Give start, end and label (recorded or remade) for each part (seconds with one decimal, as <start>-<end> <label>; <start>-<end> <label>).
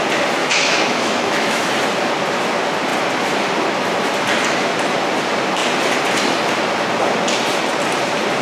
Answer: 0.0-0.4 recorded; 0.4-1.7 remade; 1.7-8.4 recorded